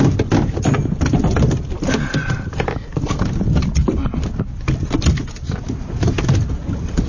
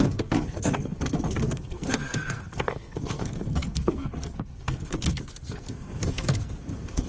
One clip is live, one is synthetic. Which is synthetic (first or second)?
second